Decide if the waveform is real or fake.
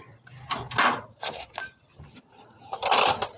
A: real